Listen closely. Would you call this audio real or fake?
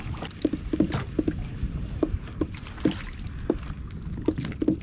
real